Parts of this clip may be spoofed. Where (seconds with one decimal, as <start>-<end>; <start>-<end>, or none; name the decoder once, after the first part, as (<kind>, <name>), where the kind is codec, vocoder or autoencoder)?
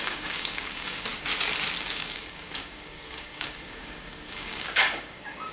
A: 0.0-1.1 (codec, DAC); 1.8-5.5